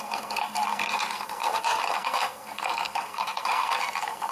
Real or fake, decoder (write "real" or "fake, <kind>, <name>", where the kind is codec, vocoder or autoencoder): fake, codec, SNAC